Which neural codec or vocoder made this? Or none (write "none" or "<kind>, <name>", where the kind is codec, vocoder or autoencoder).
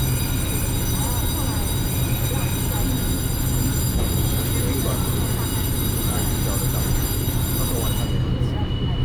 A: none